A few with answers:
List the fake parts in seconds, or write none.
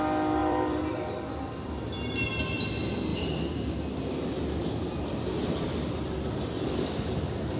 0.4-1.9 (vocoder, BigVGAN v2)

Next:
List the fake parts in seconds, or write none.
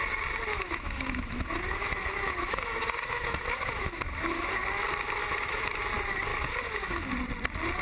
0.5-4.5 (autoencoder, DAC-VAE); 5.2-5.8; 6.3-7.1